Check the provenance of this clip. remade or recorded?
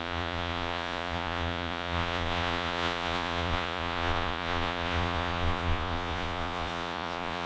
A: remade